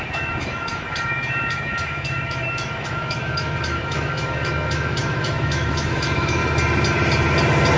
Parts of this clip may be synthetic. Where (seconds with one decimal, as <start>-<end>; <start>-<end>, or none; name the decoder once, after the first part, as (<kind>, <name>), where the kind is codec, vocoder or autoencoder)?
0.0-6.4 (autoencoder, DAC-VAE)